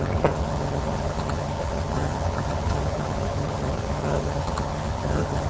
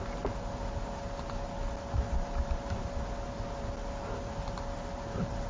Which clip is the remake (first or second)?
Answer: first